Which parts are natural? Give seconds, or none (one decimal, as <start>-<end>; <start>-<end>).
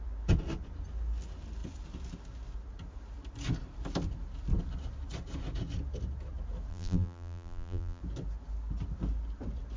0.0-6.7; 8.0-9.8